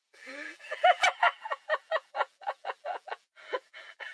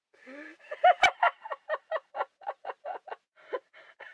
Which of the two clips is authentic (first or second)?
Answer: second